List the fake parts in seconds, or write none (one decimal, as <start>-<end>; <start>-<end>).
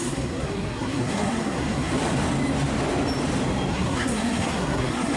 0.0-1.9; 3.7-5.2